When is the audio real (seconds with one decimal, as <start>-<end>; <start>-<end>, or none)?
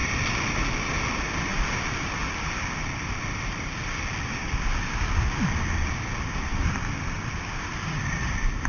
0.6-1.5; 5.6-6.5